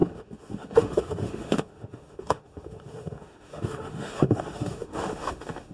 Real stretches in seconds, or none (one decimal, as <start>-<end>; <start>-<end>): none